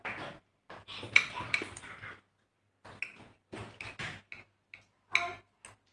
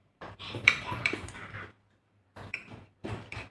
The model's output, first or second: second